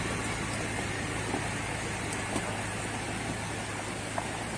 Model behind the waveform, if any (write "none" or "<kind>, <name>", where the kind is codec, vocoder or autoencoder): none